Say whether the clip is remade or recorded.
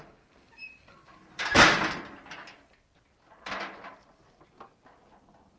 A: remade